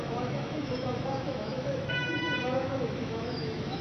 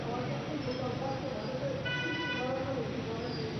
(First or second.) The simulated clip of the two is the first